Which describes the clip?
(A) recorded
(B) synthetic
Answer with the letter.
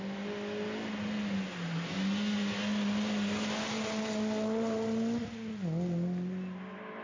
A